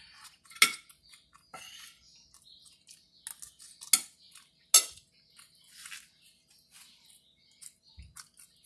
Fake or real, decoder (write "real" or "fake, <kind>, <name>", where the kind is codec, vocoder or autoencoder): real